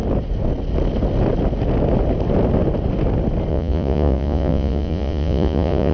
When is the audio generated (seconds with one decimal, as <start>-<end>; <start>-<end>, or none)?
3.5-5.9